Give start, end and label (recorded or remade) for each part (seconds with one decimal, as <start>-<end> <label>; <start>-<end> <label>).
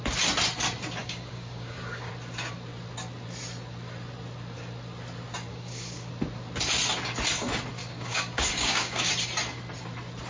0.0-1.0 recorded; 1.0-2.1 remade; 2.1-5.5 recorded; 5.5-6.1 remade; 6.1-7.8 recorded; 7.8-9.1 remade; 9.1-10.3 recorded